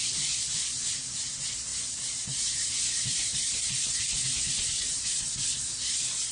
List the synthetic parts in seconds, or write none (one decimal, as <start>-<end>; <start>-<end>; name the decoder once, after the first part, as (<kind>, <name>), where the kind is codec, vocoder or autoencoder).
1.7-5.3 (vocoder, BigVGAN v2)